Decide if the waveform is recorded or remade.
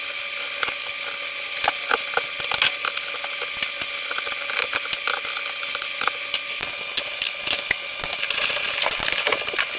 recorded